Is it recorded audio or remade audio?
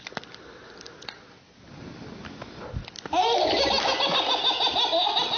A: recorded